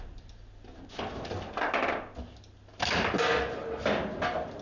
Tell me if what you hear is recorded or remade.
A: recorded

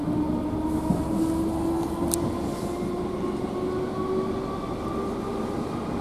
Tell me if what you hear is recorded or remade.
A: recorded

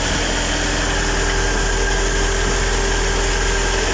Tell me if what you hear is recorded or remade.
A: recorded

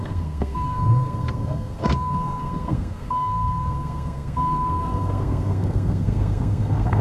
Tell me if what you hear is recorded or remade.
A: remade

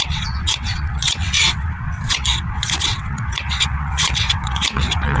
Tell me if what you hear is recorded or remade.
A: remade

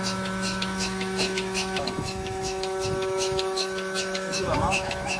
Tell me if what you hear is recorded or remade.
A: remade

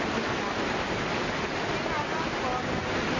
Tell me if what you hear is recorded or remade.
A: recorded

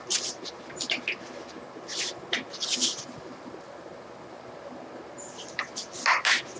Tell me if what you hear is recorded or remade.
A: recorded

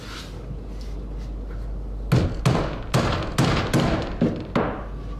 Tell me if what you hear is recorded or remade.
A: recorded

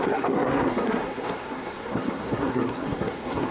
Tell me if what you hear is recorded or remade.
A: remade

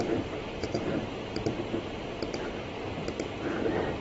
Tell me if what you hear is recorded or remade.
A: remade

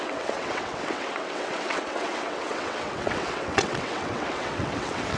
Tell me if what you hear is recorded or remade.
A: remade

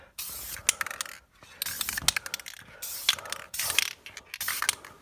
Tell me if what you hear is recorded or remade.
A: recorded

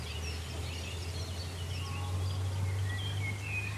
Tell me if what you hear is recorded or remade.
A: recorded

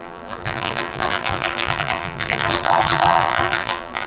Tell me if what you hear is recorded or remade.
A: remade